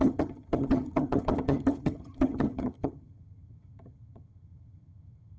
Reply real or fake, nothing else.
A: fake